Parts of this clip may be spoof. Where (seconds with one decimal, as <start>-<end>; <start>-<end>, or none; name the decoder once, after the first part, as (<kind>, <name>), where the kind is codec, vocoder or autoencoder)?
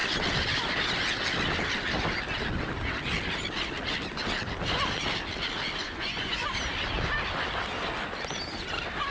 5.8-6.5 (vocoder, Vocos)